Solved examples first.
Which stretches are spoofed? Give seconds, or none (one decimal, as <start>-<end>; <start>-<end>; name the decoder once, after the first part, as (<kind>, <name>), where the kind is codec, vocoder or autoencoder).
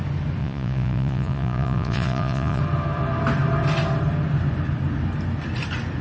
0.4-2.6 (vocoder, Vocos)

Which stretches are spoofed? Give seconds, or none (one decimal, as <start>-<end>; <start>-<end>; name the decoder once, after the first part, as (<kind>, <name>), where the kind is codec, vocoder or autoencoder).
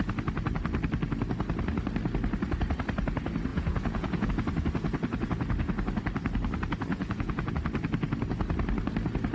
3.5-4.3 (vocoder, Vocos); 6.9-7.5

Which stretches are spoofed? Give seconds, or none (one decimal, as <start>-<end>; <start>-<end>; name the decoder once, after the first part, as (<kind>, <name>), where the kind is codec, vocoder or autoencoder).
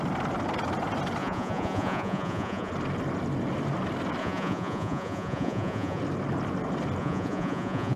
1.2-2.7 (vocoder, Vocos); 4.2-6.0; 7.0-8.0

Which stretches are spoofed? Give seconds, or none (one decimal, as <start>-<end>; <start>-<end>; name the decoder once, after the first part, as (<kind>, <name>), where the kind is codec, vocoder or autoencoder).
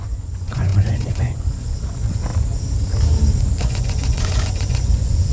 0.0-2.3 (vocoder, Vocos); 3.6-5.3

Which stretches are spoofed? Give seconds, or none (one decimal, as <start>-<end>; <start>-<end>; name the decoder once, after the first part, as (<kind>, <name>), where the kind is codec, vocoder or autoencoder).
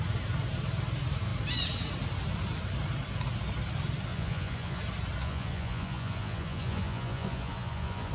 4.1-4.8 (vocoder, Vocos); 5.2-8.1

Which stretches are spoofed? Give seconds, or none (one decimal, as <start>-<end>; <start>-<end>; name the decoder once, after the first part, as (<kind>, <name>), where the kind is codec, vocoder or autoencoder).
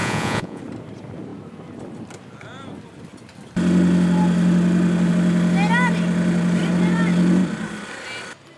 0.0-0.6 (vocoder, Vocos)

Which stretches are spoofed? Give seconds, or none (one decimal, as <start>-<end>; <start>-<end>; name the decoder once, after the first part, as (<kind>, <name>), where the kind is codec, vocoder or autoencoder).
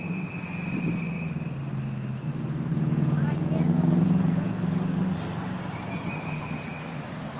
2.7-4.5 (vocoder, Vocos)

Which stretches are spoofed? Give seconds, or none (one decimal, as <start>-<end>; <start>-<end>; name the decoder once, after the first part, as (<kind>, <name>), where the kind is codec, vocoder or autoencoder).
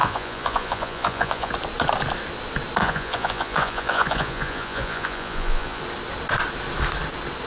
0.0-1.5 (vocoder, Vocos); 2.8-5.8